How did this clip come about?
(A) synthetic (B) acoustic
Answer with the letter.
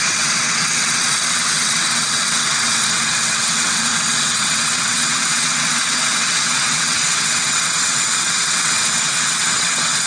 A